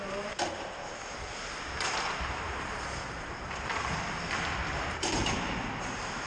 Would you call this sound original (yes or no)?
no